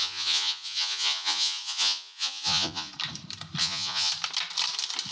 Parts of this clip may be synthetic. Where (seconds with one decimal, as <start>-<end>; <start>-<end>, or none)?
0.0-2.9; 3.6-4.1

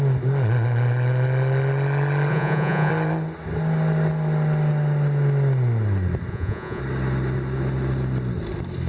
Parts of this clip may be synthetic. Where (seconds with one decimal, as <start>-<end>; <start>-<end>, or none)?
2.3-2.9; 6.3-6.8

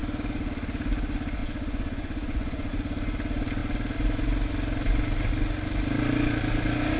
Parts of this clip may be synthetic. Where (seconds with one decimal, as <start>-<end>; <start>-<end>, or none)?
1.4-2.7

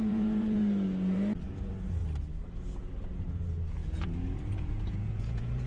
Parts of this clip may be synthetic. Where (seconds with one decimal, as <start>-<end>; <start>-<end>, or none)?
0.0-2.0; 3.2-5.7